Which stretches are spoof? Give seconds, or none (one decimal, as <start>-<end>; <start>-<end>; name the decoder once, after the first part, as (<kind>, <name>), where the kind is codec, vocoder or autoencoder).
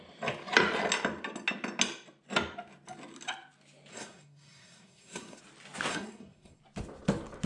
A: 3.9-5.4 (codec, SNAC); 5.9-6.6